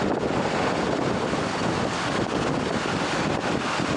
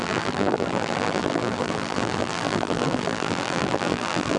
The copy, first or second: second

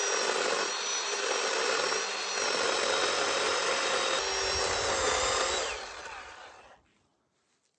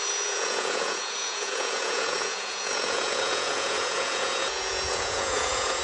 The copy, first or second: second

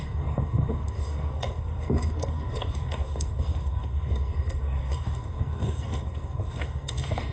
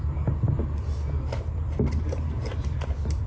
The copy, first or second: first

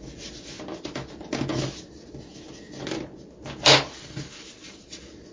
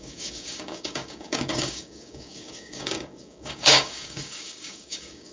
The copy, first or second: second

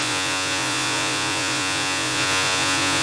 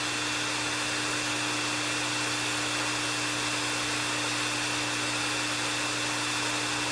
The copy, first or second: first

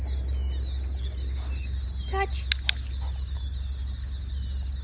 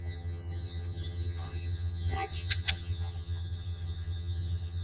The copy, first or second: second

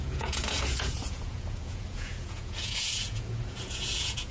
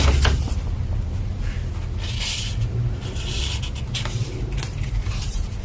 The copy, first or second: first